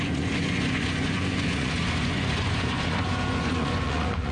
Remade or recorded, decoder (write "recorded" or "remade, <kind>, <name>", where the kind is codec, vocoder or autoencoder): remade, vocoder, Vocos